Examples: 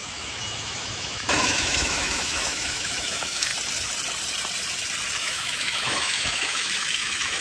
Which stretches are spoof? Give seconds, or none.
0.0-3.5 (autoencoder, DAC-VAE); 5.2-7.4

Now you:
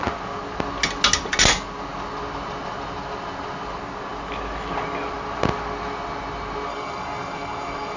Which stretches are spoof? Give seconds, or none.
6.7-8.0 (codec, DAC)